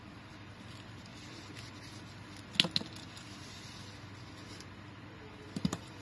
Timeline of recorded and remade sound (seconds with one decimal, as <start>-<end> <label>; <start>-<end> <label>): 0.0-1.1 remade; 1.1-4.7 recorded; 4.7-6.0 remade